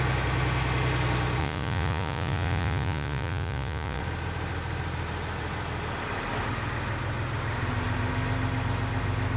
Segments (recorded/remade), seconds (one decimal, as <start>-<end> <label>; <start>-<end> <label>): 0.0-1.4 recorded; 1.4-4.0 remade; 4.0-9.4 recorded